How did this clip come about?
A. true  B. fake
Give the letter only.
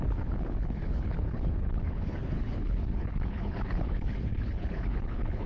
B